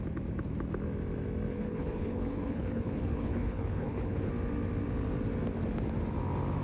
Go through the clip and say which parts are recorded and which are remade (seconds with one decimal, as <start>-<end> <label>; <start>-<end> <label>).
0.0-1.5 recorded; 1.5-4.3 remade; 4.3-6.6 recorded